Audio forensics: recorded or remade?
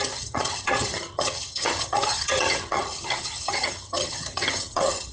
remade